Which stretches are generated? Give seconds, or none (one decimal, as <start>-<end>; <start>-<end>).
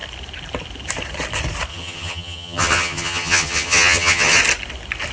1.7-4.4